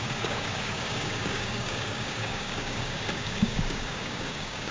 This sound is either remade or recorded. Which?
remade